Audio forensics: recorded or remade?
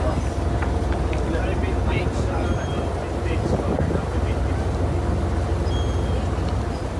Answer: recorded